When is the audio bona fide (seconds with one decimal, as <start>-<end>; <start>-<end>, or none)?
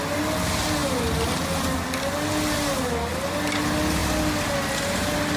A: 0.0-5.4